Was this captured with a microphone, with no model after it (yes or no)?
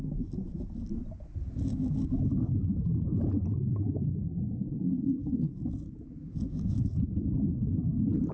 yes